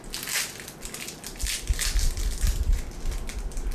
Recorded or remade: recorded